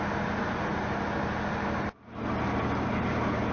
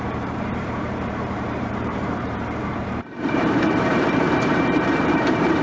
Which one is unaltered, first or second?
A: first